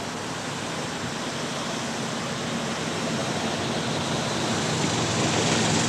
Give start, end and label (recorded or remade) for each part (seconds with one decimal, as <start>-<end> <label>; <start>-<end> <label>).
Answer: 0.0-5.9 recorded

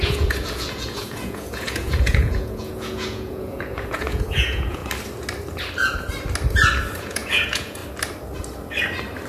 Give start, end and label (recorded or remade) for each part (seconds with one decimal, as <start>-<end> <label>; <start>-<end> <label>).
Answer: 0.0-4.8 remade; 4.8-7.0 recorded; 7.0-7.8 remade; 7.8-9.3 recorded